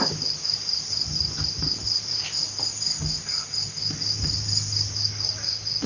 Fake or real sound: real